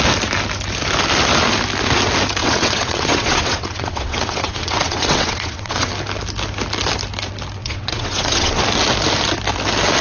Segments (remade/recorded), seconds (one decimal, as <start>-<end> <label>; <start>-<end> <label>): 0.0-2.4 recorded; 2.4-5.9 remade; 5.9-7.6 recorded; 7.6-8.6 remade; 8.6-10.0 recorded